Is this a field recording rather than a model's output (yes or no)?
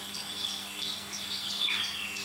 no